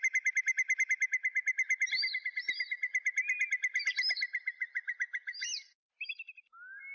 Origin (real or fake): real